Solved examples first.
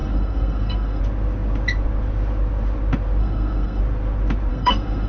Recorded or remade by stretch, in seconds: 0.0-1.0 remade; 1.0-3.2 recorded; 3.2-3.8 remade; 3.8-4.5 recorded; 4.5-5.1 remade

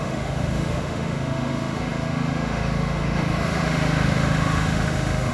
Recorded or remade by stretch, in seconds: 0.0-5.3 remade